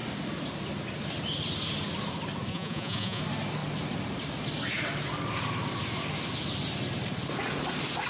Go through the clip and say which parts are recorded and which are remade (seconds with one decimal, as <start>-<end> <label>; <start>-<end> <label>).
0.0-2.5 recorded; 2.5-3.2 remade; 3.2-8.1 recorded